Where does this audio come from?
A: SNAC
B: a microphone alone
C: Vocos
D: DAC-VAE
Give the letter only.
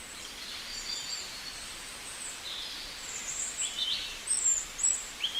B